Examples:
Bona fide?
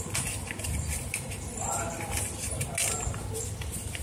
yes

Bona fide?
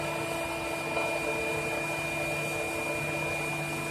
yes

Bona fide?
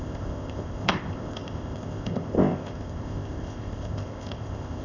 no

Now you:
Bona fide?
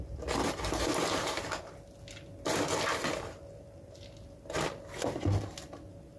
yes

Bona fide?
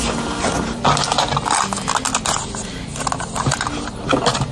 yes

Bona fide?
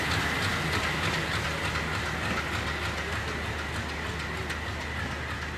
yes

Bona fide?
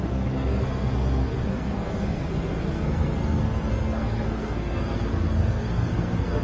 no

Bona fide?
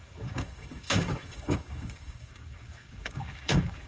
no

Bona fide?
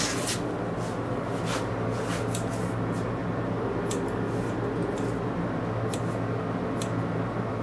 yes